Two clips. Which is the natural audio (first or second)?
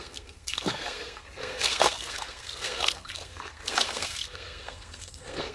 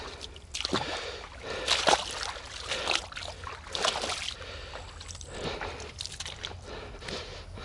second